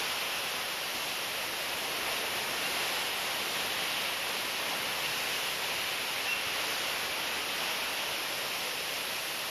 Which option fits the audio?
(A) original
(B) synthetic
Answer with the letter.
A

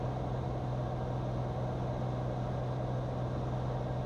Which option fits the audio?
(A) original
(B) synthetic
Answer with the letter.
A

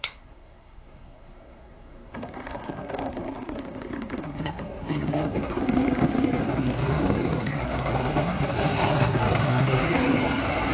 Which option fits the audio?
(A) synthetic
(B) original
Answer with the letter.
A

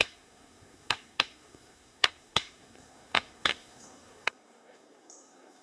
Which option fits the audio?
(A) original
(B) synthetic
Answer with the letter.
B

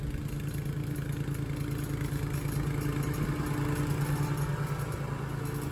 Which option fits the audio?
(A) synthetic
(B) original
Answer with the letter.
B